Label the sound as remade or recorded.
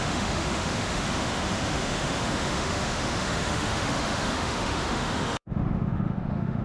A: remade